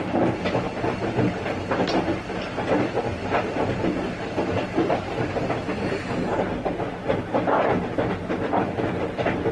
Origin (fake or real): real